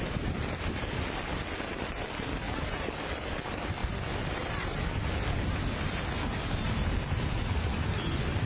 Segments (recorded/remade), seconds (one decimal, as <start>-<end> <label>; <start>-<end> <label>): 0.0-7.4 recorded; 7.4-7.9 remade; 7.9-8.5 recorded